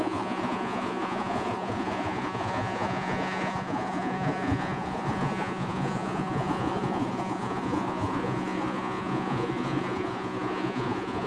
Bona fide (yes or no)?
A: no